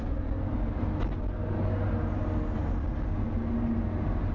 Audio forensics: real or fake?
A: real